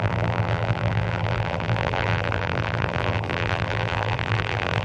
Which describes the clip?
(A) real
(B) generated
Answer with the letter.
B